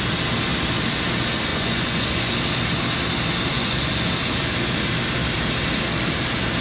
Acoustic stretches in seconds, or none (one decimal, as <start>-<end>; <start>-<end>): 0.0-1.5; 2.3-3.5; 4.1-6.6